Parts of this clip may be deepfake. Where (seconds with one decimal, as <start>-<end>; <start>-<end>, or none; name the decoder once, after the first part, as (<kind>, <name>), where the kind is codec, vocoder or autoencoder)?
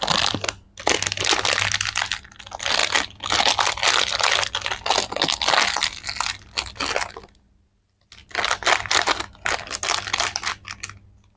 none